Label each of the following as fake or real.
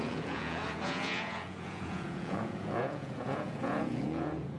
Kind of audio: fake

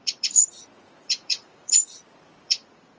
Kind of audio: fake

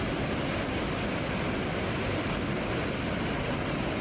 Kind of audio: real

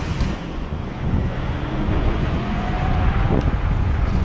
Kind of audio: fake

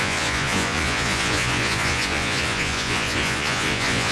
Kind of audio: fake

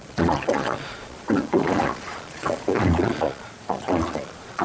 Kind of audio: fake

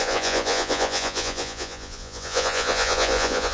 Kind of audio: fake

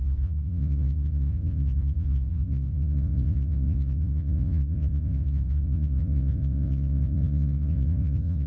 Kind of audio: fake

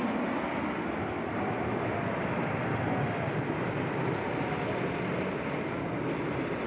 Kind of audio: real